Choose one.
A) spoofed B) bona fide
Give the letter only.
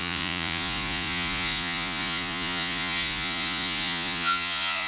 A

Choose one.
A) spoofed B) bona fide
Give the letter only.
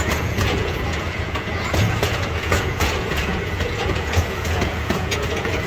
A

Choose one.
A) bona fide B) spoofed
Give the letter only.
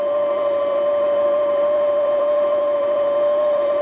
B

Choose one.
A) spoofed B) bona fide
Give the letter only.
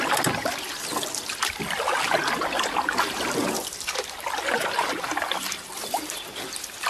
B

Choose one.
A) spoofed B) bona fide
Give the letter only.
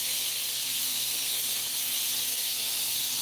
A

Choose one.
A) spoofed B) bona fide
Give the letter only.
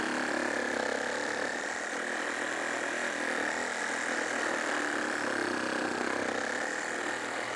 B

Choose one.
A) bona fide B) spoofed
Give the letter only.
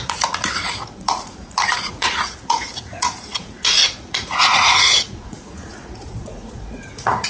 B